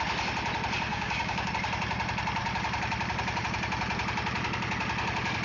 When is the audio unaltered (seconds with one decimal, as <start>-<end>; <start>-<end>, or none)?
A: 0.0-0.9; 1.5-5.4